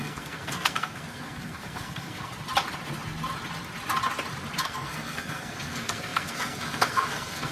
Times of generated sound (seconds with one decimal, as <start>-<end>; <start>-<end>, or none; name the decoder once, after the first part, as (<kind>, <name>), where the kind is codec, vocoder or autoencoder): 0.0-2.3 (codec, SNAC); 4.6-7.5